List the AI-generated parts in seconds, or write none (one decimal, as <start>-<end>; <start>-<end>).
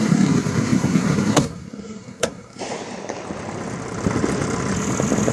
0.0-2.6